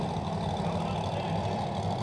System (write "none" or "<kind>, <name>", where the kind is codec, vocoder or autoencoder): none